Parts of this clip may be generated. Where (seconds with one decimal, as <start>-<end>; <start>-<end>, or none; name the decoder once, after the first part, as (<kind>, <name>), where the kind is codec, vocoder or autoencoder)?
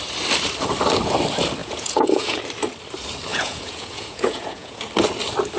1.6-2.4 (vocoder, Vocos); 3.3-4.9